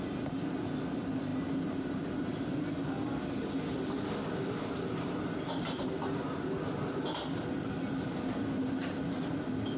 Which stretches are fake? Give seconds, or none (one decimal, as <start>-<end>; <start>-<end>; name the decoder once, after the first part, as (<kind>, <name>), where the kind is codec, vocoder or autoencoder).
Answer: none